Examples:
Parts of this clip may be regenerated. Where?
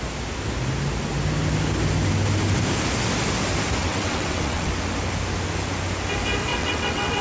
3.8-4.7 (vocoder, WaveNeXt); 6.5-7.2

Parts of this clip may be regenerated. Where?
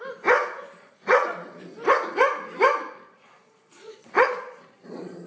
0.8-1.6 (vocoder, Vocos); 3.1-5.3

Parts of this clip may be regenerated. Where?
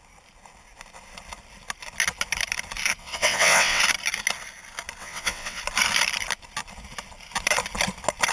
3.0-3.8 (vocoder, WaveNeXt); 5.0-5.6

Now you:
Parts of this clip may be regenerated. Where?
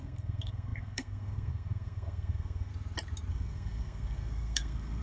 0.0-2.7 (codec, SNAC); 3.3-5.0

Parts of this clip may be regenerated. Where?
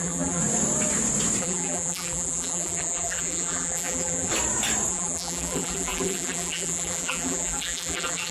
0.0-0.4 (vocoder, BigVGAN v2); 1.4-4.3; 4.9-8.3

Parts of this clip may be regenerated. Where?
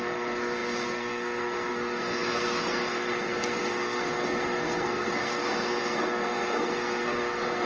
0.0-7.7 (codec, SNAC)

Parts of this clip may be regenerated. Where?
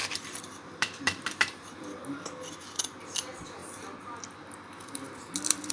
0.0-5.7 (vocoder, BigVGAN v2)